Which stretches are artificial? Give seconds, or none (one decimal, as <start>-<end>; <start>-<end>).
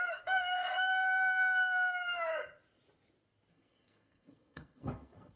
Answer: 0.0-2.3; 3.5-5.4